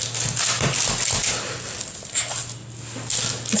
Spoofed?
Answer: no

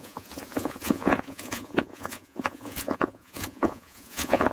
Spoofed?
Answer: yes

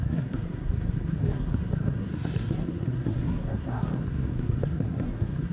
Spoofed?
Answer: yes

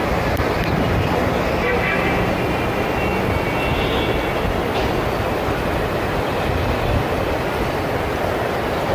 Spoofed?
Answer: no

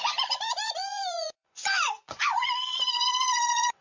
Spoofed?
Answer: yes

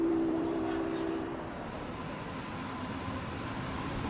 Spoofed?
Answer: yes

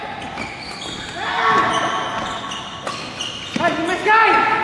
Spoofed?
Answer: no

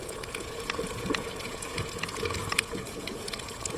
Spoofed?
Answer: yes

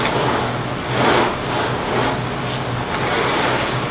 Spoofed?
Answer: no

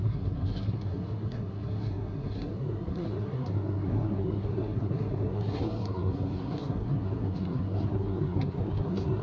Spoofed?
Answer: yes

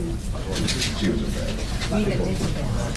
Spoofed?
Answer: no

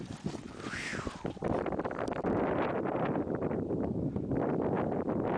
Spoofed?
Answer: no